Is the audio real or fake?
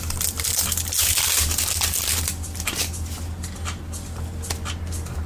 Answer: real